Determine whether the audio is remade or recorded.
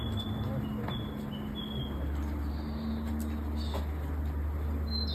recorded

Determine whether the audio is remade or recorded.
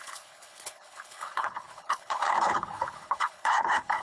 remade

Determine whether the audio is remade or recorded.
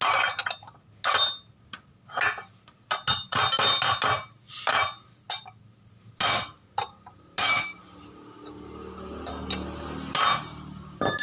recorded